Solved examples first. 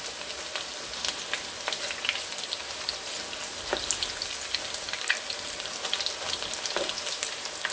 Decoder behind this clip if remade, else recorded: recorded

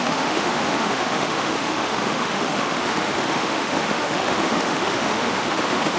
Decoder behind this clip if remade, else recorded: remade, autoencoder, DAC-VAE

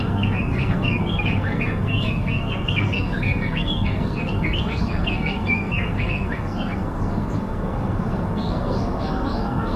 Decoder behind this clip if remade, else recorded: remade, codec, SNAC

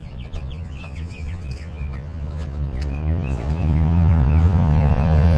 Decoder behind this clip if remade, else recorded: remade, vocoder, Vocos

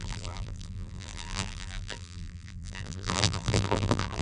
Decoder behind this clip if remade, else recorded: remade, vocoder, BigVGAN v2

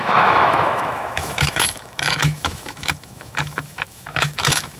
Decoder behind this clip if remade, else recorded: remade, autoencoder, DAC-VAE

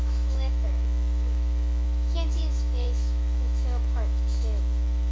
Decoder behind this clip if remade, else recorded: remade, autoencoder, DAC-VAE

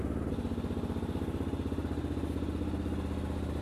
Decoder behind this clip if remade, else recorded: recorded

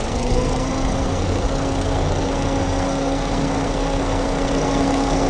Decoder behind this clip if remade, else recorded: remade, codec, SNAC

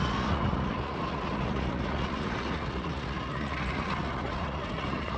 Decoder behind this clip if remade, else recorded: remade, vocoder, Vocos